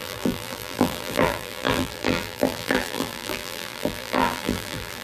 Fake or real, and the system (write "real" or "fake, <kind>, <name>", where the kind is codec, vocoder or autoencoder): fake, vocoder, BigVGAN v2